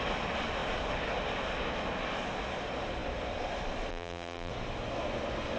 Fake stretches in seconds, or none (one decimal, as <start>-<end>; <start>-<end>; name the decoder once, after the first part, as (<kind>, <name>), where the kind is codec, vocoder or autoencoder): 3.9-4.5 (vocoder, BigVGAN v2)